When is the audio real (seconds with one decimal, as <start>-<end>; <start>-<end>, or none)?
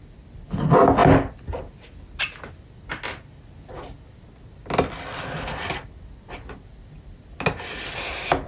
0.0-8.5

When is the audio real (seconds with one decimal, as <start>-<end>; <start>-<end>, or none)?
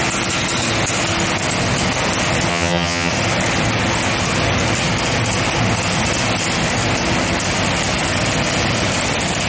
0.0-2.5; 3.1-9.5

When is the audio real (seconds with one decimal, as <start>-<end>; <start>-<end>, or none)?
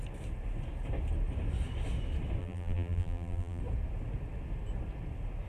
0.0-2.4; 3.6-5.5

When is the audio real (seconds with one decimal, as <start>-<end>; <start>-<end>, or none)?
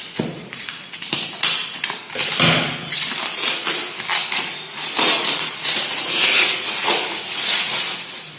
1.0-4.3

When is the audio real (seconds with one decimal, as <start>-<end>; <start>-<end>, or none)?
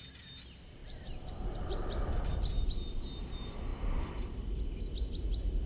0.0-5.7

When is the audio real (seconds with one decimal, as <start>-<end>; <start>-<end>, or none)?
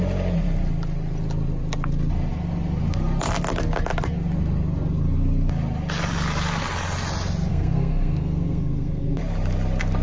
0.0-7.5; 9.2-10.0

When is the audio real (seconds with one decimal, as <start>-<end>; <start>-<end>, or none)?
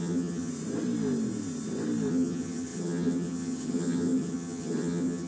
0.5-2.1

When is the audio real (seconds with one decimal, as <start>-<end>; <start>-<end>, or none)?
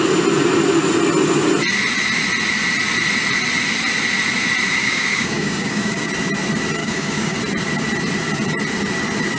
0.0-4.8; 6.1-6.8; 7.4-9.4